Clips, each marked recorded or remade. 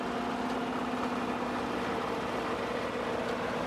recorded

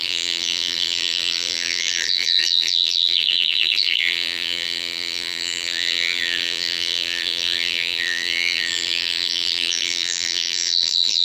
remade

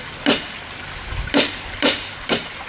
recorded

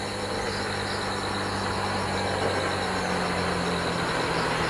recorded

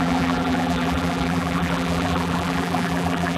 remade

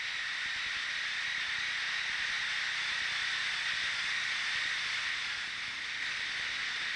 recorded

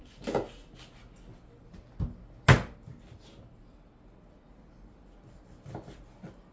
recorded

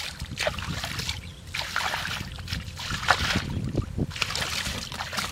remade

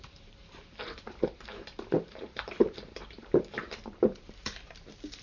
remade